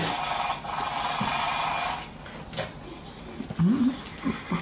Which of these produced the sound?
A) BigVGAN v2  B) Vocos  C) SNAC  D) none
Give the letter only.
D